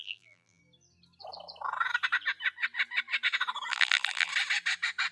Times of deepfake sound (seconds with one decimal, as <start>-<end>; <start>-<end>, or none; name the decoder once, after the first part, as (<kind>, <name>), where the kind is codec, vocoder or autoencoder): 0.0-0.6 (vocoder, BigVGAN v2); 3.7-4.3